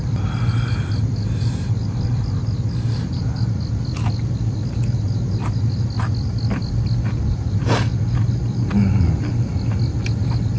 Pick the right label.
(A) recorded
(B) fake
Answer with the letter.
A